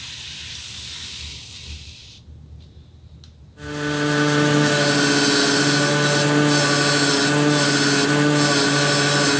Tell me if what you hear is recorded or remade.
recorded